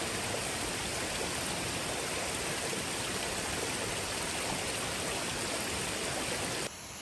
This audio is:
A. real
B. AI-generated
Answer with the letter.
A